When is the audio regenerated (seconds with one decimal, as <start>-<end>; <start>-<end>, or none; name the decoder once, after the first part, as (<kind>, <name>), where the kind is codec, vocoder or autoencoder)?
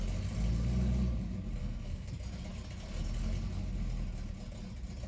1.6-2.1 (codec, SNAC)